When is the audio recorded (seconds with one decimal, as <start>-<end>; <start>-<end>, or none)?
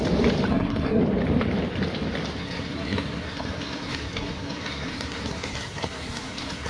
0.0-0.5; 1.0-2.4